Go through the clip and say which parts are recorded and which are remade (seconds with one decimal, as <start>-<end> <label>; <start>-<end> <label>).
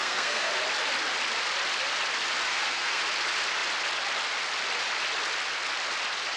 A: 0.0-0.5 remade; 0.5-2.5 recorded; 2.5-3.0 remade; 3.0-6.4 recorded